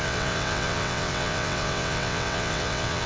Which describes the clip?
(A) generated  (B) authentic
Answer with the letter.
A